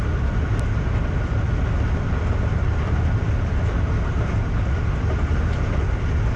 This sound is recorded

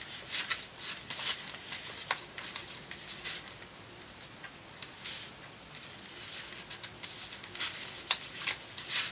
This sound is recorded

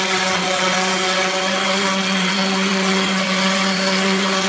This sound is remade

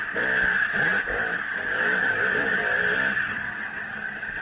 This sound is recorded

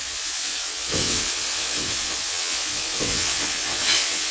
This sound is remade